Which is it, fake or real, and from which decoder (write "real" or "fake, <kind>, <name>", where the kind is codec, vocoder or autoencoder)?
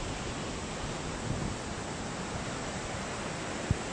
real